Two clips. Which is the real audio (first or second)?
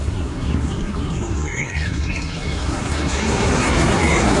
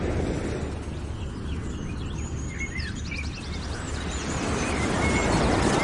second